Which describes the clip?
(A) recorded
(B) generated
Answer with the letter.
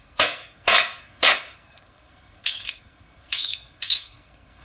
B